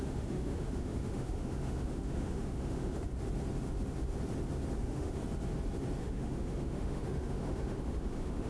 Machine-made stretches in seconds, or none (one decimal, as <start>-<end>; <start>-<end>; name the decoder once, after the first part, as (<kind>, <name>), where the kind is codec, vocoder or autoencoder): 0.0-3.1 (autoencoder, DAC-VAE); 4.8-5.2; 6.0-8.5